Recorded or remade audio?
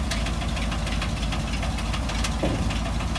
recorded